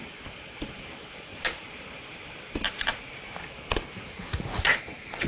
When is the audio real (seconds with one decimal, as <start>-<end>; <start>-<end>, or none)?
0.0-5.3